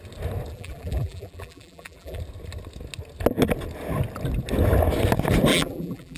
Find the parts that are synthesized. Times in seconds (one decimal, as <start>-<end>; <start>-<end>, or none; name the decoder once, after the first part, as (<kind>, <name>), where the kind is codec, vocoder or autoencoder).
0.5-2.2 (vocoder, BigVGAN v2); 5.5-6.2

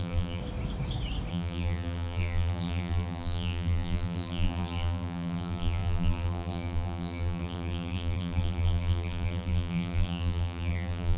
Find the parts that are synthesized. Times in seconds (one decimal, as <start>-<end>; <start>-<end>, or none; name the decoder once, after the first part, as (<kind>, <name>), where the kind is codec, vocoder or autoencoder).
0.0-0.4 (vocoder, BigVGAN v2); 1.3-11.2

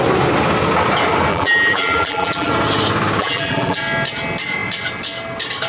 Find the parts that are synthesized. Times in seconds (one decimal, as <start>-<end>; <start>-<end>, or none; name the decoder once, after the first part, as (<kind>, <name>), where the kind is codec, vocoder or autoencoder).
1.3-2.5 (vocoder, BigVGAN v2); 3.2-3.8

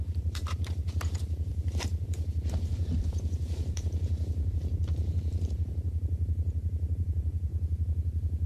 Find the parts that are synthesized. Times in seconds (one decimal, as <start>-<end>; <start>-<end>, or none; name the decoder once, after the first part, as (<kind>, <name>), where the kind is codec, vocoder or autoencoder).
0.0-7.5 (vocoder, BigVGAN v2)

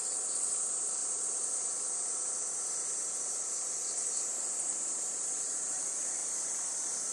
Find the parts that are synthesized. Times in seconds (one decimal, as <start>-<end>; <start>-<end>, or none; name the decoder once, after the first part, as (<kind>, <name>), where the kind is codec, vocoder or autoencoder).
0.0-7.1 (vocoder, BigVGAN v2)